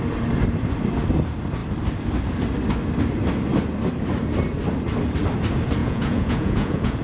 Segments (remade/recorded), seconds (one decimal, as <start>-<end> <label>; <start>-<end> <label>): 0.0-5.8 recorded; 5.8-7.0 remade